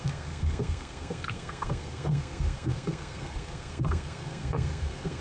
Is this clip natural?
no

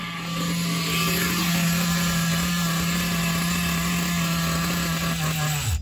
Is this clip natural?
yes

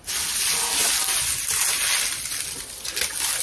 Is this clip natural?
yes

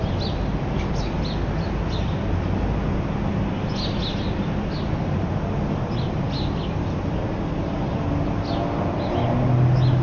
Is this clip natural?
yes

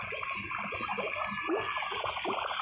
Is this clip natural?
yes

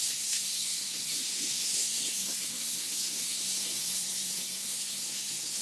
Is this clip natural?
no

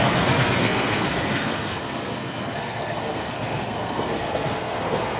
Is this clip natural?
no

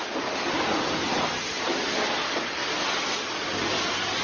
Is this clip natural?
yes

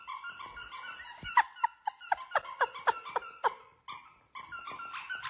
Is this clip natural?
yes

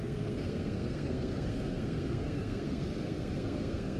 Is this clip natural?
no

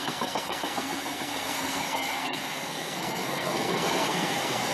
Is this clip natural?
no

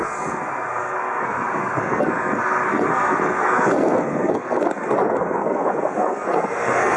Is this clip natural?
no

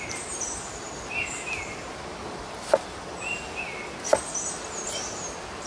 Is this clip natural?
yes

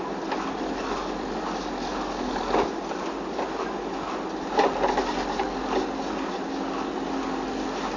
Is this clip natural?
yes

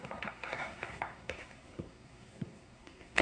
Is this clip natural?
no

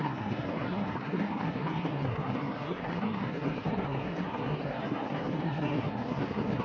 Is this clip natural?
no